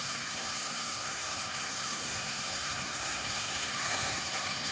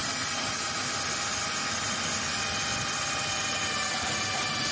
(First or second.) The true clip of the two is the second